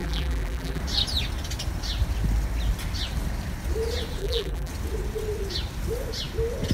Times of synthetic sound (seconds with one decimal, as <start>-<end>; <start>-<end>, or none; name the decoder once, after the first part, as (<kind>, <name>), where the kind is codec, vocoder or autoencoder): 0.0-0.8 (vocoder, BigVGAN v2); 4.2-4.7